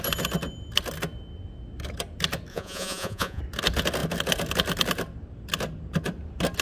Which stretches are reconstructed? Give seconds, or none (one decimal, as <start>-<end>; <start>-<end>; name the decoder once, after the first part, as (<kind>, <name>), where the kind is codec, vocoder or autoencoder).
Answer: 2.5-3.4 (vocoder, Vocos)